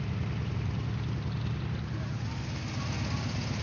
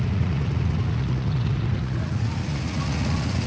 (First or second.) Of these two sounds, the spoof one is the second